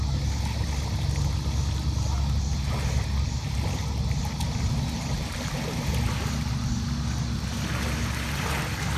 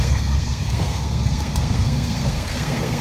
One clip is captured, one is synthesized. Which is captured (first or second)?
first